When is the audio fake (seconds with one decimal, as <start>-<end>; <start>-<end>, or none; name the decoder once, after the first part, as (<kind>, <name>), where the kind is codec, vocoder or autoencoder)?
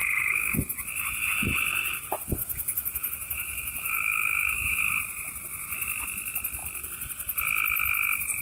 0.0-0.6 (autoencoder, DAC-VAE); 2.4-4.8